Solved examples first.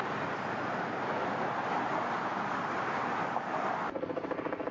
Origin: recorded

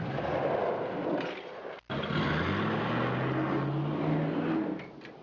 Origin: recorded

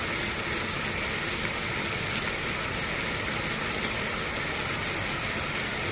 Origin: recorded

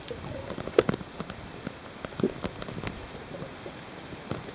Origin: recorded